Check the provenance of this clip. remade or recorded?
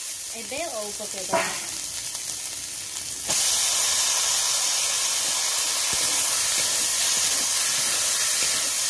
recorded